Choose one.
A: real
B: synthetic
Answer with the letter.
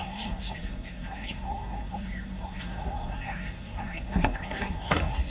B